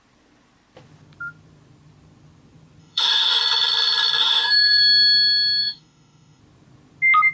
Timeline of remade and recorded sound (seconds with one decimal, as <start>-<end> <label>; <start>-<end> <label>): 0.0-2.8 recorded; 2.8-3.4 remade; 3.4-4.2 recorded; 4.2-4.8 remade; 4.8-5.6 recorded; 5.6-6.4 remade; 6.4-7.3 recorded